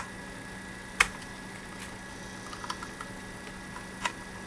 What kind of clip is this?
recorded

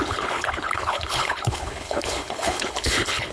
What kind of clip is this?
remade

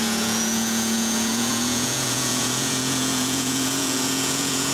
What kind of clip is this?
remade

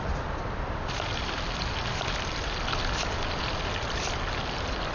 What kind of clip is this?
recorded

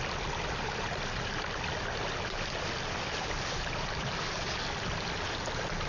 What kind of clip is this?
recorded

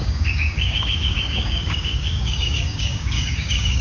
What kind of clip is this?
remade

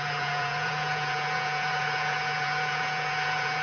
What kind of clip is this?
remade